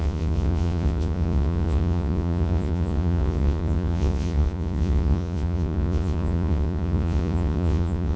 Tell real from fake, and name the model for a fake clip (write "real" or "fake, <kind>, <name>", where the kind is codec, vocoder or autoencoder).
fake, vocoder, Vocos